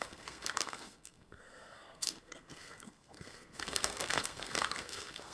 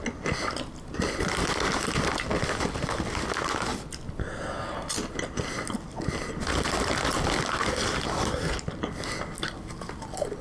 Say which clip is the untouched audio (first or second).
second